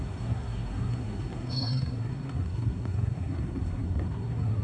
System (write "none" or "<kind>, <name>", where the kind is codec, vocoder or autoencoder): codec, SNAC